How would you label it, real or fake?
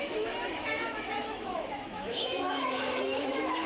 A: fake